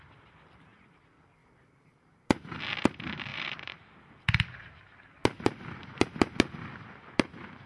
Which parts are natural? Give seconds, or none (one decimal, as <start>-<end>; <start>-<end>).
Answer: 0.0-1.4; 2.6-3.3; 3.8-7.7